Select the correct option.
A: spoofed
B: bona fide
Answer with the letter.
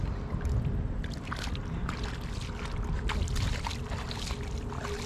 B